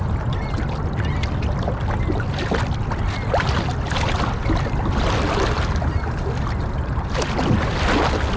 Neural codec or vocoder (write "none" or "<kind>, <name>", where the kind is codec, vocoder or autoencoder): none